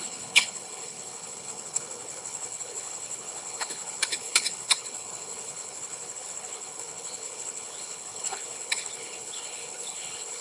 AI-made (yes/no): yes